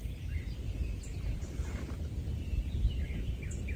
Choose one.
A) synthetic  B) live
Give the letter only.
B